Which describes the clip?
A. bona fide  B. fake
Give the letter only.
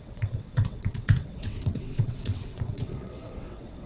B